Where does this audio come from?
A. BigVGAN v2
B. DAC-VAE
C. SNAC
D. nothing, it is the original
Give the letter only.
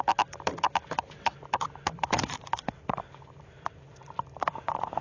A